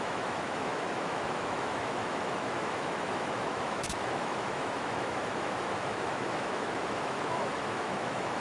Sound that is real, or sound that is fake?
fake